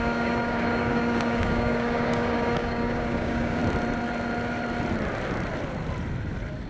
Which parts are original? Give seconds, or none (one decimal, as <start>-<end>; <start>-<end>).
3.6-6.7